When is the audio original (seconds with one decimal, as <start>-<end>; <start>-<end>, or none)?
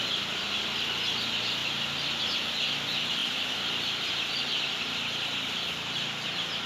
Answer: 0.0-1.6; 2.2-3.2; 4.1-6.7